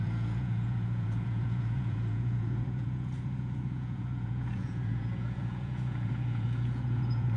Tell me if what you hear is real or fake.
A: fake